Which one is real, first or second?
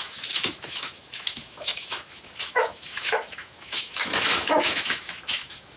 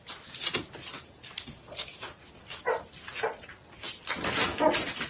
second